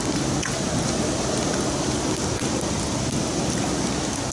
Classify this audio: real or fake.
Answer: real